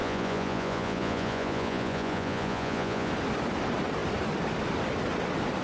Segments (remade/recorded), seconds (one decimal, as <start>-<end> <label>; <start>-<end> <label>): 0.0-3.1 remade; 3.1-5.6 recorded